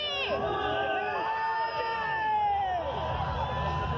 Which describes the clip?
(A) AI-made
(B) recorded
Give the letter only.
B